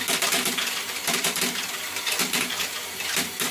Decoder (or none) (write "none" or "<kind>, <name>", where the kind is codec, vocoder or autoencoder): vocoder, BigVGAN v2